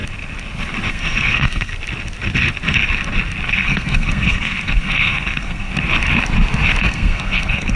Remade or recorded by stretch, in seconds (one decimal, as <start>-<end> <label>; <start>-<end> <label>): 0.0-0.9 recorded; 0.9-1.7 remade; 1.7-3.5 recorded; 3.5-5.7 remade; 5.7-6.8 recorded; 6.8-7.8 remade